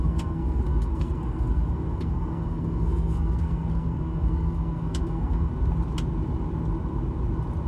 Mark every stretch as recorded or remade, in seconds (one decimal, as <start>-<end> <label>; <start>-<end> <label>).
0.0-5.5 remade; 5.5-7.7 recorded